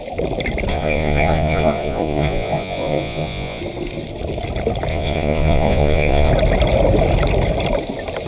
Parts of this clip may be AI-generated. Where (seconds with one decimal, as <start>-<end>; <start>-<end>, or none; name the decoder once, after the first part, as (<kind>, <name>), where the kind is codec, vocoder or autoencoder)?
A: 0.7-3.6 (vocoder, Vocos); 4.9-6.3